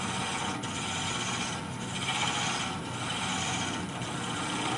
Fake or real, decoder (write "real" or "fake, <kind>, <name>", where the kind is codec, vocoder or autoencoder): real